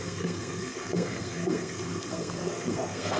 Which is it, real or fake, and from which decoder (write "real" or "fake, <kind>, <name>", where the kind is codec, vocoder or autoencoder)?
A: fake, codec, SNAC